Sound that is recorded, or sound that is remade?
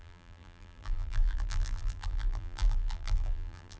remade